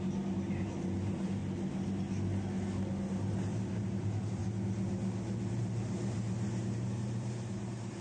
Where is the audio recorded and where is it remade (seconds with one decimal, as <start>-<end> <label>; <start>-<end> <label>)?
0.0-1.4 remade; 1.4-3.3 recorded; 3.3-4.4 remade; 4.4-5.5 recorded; 5.5-8.0 remade